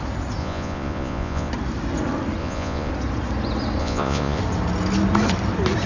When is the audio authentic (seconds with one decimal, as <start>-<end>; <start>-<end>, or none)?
0.0-0.4; 1.5-2.4; 2.9-3.8; 4.4-5.9